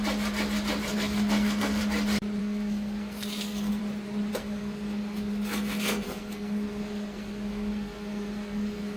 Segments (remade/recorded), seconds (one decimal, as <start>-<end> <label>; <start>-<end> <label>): 0.0-0.9 recorded; 0.9-1.8 remade; 1.8-2.4 recorded; 2.4-3.8 remade; 3.8-4.3 recorded; 4.3-9.0 remade